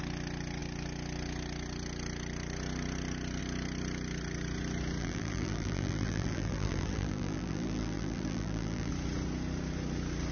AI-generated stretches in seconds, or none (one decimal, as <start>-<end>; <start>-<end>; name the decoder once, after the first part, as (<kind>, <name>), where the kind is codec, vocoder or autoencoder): 5.0-8.9 (vocoder, BigVGAN v2)